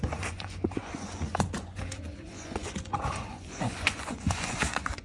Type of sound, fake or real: fake